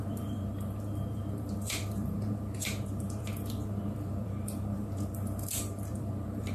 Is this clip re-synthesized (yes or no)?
yes